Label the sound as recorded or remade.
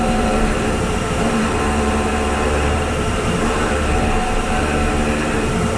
remade